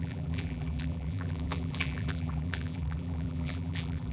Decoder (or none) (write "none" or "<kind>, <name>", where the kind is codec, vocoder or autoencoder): vocoder, BigVGAN v2